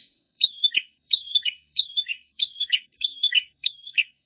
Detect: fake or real fake